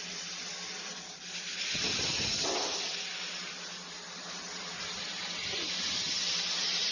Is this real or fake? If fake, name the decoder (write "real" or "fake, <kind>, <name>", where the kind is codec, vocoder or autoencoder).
real